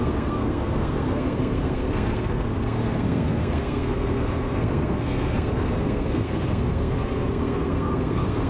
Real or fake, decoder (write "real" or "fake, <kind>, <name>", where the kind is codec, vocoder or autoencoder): fake, codec, SNAC